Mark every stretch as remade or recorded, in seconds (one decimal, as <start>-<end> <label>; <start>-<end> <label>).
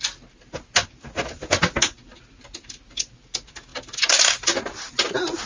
0.0-5.5 recorded